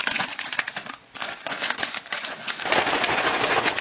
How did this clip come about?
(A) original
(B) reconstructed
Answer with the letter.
B